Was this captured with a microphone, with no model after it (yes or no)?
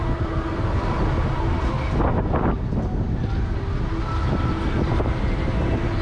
yes